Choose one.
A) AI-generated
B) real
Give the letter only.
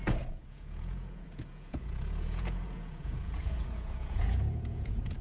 A